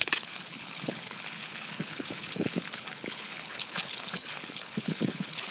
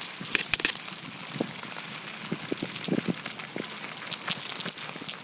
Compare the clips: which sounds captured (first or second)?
second